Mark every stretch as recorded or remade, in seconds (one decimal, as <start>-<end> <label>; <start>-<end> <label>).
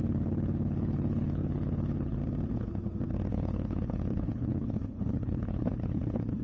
0.0-2.2 remade; 2.2-3.3 recorded; 3.3-6.4 remade